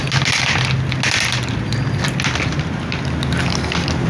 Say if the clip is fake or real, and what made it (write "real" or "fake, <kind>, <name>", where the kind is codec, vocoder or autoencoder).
real